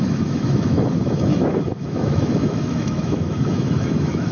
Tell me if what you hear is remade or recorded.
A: remade